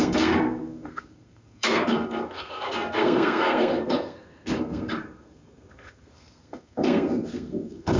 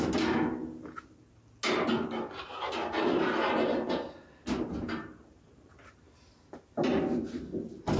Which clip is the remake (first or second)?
first